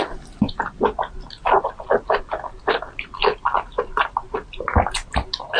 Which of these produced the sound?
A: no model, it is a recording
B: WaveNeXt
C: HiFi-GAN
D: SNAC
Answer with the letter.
A